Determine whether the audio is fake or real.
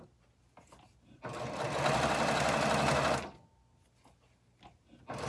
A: real